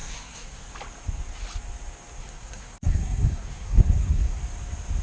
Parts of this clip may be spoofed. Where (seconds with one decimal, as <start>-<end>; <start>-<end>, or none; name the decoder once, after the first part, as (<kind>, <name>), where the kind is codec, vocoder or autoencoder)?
0.0-0.7 (codec, SNAC); 2.2-4.4

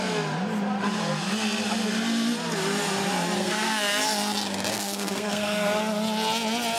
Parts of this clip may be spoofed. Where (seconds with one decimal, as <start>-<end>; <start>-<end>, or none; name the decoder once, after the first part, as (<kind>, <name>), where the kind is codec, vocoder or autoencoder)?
3.4-4.0 (codec, SNAC); 4.7-5.8

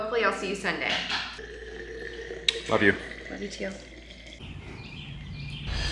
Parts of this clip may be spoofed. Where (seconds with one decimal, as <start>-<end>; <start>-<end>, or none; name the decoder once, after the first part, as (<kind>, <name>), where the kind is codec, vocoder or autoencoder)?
none

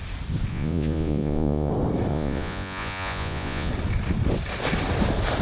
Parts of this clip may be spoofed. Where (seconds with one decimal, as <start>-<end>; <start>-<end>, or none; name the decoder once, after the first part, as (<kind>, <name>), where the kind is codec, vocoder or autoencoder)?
0.5-1.7 (vocoder, Vocos); 2.1-3.7